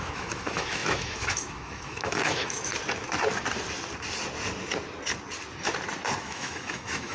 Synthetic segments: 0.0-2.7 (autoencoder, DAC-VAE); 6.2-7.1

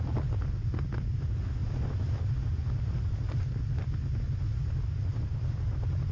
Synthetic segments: none

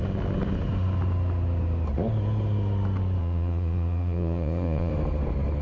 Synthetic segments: 3.2-4.9 (vocoder, Vocos)

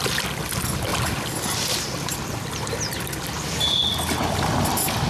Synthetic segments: none

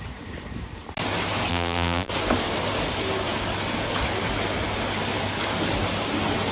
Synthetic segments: 1.5-2.1 (vocoder, BigVGAN v2)

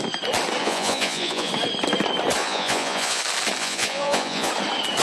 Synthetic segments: 0.6-1.5 (vocoder, Vocos); 2.4-3.2; 3.6-4.5